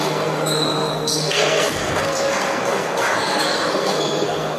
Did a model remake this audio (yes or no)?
yes